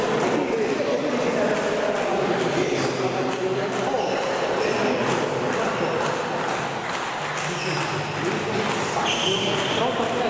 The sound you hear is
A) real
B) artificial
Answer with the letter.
A